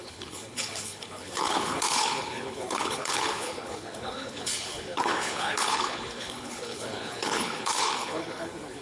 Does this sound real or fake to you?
fake